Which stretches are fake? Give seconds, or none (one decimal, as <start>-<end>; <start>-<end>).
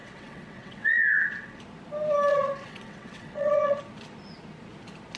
0.0-1.6; 2.3-3.8